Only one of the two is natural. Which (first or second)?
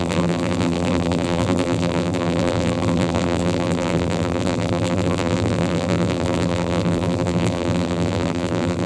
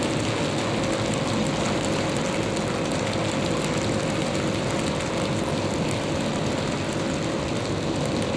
second